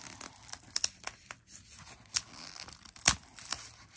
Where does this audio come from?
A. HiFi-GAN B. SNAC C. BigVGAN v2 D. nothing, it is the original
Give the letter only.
D